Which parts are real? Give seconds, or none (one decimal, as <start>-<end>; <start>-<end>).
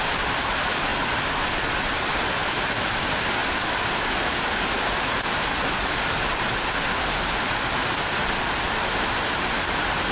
0.0-10.1